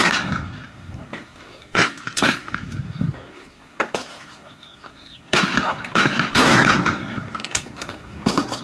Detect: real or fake fake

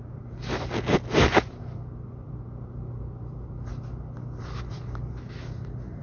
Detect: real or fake real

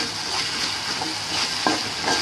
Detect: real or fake real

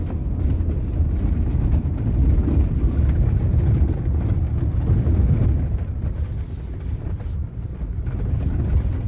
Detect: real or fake real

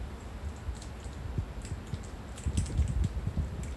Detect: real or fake real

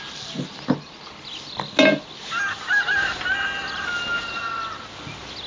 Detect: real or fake real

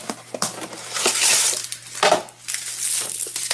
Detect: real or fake real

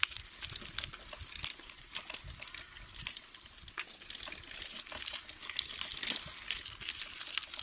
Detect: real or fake real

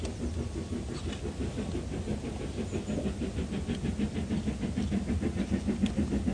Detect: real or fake real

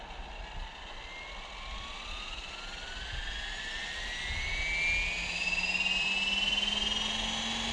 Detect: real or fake real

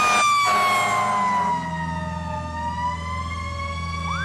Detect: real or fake real